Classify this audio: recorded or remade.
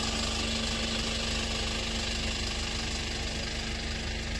recorded